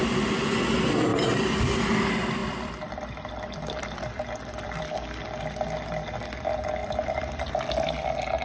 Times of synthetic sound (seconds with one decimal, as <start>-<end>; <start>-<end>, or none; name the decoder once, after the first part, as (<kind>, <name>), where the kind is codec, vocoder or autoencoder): 1.1-1.8 (vocoder, BigVGAN v2); 2.4-4.8; 6.8-7.5